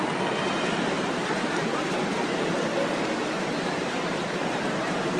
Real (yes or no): yes